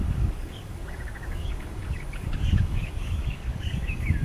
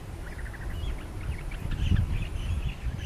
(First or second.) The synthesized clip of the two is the first